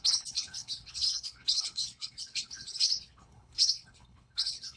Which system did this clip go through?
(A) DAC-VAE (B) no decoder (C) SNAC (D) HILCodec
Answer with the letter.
D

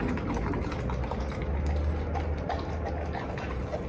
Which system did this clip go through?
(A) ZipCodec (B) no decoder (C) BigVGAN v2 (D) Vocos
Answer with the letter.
B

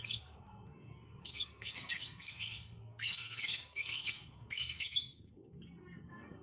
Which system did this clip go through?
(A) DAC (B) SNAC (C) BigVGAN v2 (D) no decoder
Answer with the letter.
B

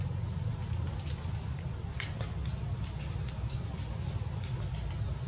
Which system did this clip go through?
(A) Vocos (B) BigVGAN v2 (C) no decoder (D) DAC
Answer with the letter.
C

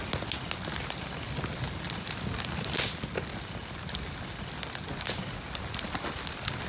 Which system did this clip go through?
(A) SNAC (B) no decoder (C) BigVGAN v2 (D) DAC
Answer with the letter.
B